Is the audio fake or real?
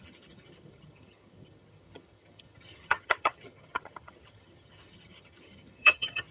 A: fake